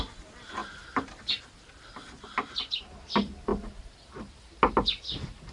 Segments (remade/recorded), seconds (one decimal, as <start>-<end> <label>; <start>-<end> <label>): 0.0-5.5 recorded